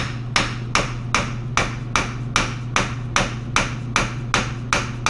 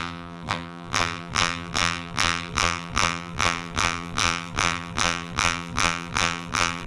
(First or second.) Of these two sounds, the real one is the first